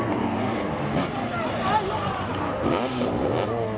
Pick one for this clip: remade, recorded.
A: recorded